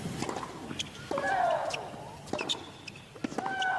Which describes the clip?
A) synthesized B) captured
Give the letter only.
B